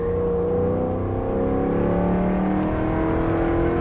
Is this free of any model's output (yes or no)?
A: yes